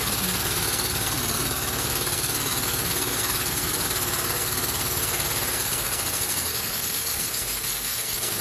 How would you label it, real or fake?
fake